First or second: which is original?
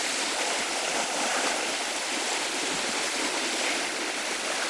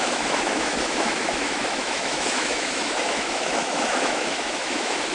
first